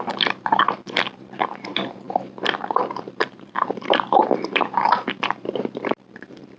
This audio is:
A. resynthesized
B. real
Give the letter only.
A